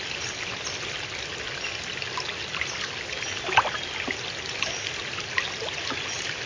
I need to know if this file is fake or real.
real